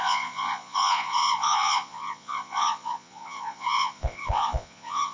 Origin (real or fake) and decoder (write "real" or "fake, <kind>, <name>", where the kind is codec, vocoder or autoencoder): fake, vocoder, Vocos